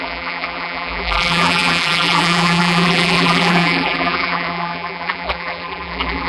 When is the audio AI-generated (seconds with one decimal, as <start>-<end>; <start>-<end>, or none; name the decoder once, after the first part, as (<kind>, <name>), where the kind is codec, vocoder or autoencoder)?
0.0-6.3 (vocoder, BigVGAN v2)